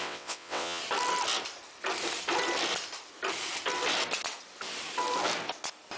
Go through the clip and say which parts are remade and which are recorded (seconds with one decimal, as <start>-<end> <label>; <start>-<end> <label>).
0.0-0.8 remade; 0.8-6.0 recorded